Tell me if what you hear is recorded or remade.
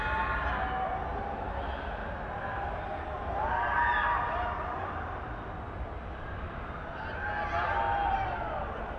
recorded